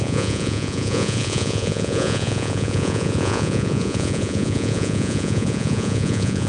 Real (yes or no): no